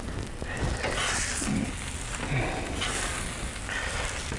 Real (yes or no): yes